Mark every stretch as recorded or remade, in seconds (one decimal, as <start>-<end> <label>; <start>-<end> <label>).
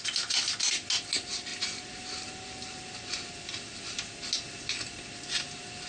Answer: 0.0-5.9 recorded